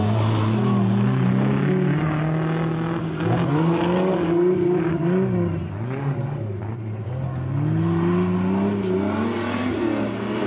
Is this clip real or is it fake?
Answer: real